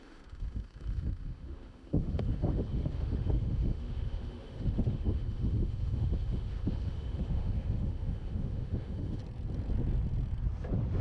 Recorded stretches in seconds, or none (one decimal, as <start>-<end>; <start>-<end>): 9.2-11.0